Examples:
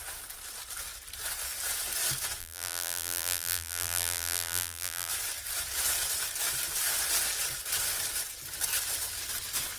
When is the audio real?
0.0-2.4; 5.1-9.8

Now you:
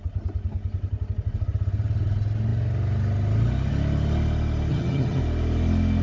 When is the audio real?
0.0-4.7; 5.2-6.0

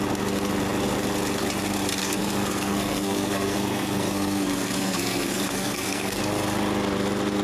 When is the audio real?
0.0-2.0; 6.2-7.4

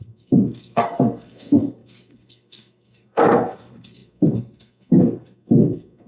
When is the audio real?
none

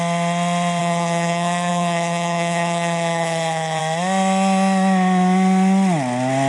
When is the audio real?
0.0-0.8; 3.8-6.5

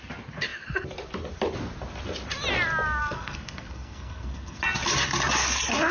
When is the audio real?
0.0-3.0; 4.6-5.9

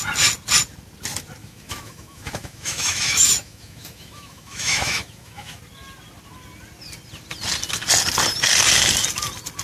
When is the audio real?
0.0-1.4; 5.6-9.6